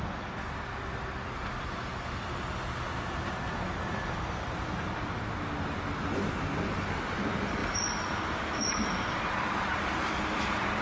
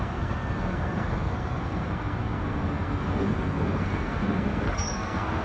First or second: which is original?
first